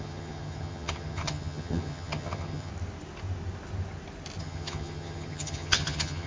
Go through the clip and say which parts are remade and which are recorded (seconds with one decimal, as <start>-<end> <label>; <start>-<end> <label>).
0.0-2.7 remade; 2.7-4.4 recorded; 4.4-6.3 remade